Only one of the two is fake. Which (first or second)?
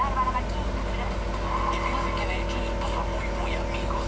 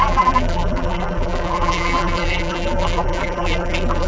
second